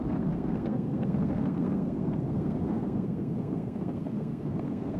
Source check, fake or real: fake